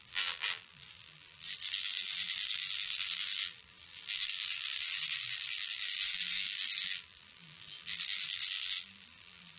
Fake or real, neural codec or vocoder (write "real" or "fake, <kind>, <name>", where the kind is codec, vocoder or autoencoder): fake, vocoder, BigVGAN v2